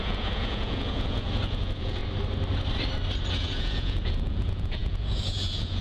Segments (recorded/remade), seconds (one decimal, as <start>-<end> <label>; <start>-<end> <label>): 0.0-2.0 remade; 2.0-3.3 recorded; 3.3-5.8 remade